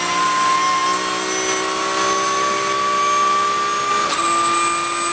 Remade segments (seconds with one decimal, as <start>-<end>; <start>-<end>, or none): none